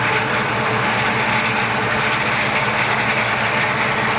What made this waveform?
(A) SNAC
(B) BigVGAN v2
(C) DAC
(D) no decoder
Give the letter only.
D